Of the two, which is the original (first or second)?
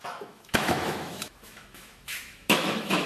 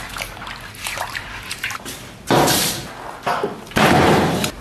second